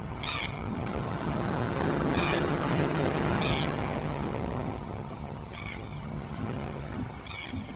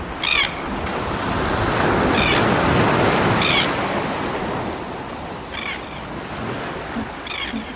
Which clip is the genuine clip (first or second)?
second